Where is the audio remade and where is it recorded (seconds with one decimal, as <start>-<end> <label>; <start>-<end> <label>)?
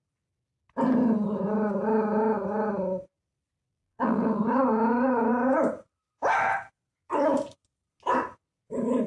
0.0-3.7 recorded; 3.7-4.4 remade; 4.4-9.1 recorded